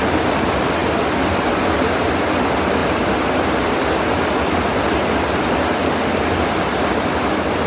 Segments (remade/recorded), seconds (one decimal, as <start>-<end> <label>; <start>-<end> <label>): 0.0-7.7 recorded